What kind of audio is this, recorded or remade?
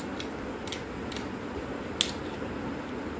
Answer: recorded